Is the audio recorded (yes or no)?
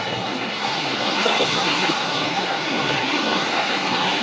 no